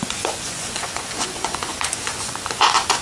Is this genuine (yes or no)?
no